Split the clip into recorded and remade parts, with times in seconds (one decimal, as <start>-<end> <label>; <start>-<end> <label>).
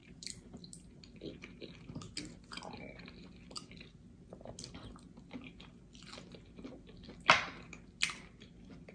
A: 0.0-0.6 remade; 0.6-8.9 recorded